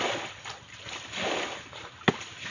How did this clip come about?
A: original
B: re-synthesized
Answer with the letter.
A